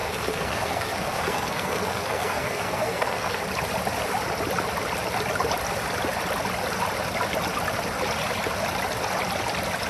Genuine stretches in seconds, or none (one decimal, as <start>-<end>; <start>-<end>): 3.4-9.9